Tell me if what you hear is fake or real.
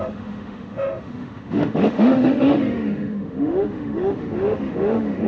fake